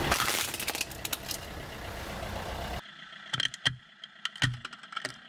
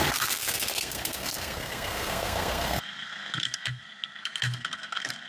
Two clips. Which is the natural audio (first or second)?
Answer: first